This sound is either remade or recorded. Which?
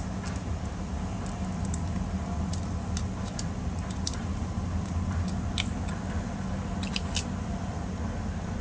recorded